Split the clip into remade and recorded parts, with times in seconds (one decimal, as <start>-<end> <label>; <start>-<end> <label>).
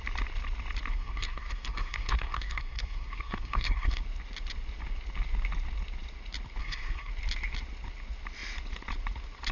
0.0-0.9 recorded; 0.9-4.0 remade; 4.0-6.6 recorded; 6.6-7.1 remade; 7.1-9.5 recorded